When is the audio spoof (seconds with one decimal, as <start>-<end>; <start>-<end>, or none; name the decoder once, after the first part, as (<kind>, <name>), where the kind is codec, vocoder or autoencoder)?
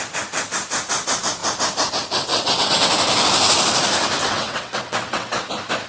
2.3-2.9 (vocoder, WaveNeXt); 4.2-5.4